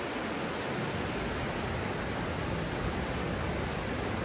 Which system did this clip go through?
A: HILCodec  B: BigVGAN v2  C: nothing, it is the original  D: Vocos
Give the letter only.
C